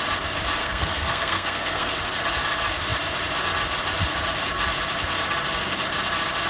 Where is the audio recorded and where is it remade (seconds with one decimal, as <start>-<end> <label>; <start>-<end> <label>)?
0.0-0.6 recorded; 0.6-1.9 remade; 1.9-6.5 recorded